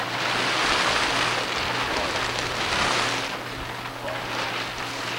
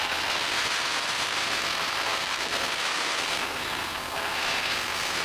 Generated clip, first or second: second